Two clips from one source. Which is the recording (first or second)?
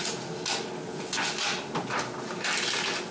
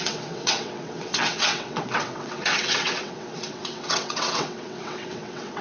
first